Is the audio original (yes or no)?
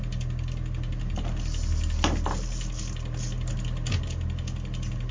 yes